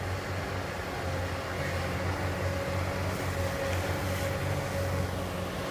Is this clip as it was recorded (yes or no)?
yes